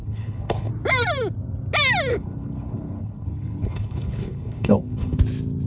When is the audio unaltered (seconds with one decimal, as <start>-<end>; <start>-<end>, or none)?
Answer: 0.7-2.1; 5.2-5.7